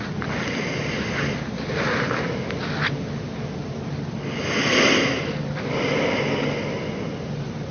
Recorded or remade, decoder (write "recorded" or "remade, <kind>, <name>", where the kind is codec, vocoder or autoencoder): recorded